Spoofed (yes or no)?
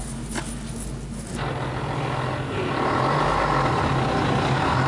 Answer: no